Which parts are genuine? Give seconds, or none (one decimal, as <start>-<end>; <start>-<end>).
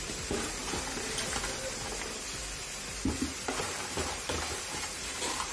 0.6-3.6